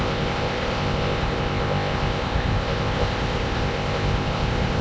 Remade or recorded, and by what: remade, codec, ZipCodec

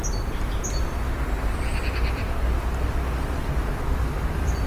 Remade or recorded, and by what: recorded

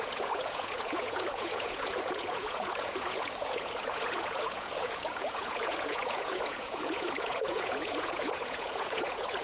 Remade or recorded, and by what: remade, vocoder, Vocos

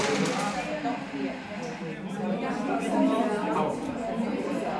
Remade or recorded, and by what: recorded